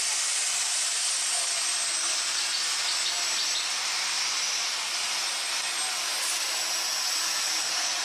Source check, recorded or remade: recorded